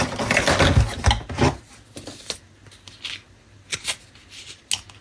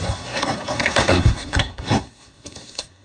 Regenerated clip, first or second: second